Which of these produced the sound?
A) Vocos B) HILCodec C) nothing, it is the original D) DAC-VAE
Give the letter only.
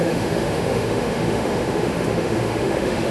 D